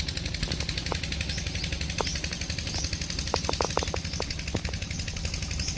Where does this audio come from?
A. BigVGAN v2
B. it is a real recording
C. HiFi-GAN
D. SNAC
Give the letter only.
B